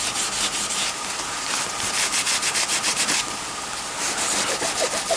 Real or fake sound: real